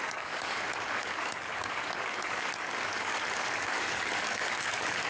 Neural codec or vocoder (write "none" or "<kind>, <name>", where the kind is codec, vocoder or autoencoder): codec, DAC